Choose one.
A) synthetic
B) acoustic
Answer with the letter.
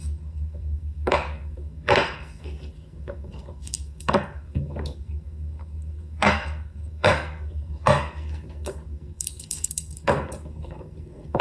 A